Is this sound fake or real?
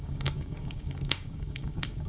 fake